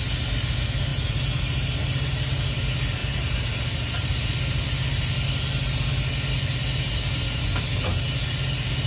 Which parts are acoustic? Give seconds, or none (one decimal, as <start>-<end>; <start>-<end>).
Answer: 0.0-0.9; 1.4-1.8; 2.4-3.0; 3.6-8.9